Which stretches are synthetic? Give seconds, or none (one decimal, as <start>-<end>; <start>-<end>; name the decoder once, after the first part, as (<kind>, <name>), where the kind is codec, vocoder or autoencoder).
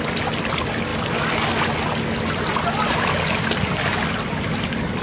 none